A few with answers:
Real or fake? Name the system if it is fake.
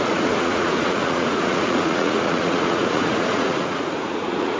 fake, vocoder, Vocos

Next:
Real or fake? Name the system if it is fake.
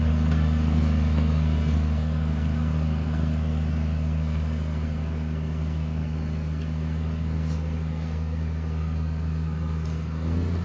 fake, codec, SNAC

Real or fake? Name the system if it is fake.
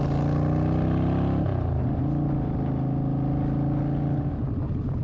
real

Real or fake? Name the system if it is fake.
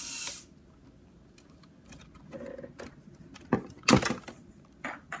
real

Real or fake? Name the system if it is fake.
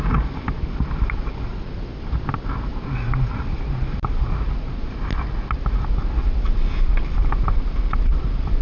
real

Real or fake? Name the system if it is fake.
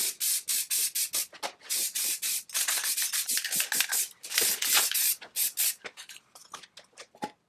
real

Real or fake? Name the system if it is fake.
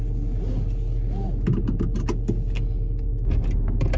real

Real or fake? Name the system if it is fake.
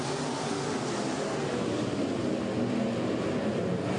real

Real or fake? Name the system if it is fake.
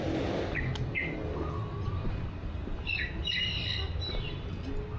real